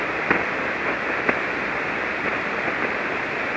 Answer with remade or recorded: remade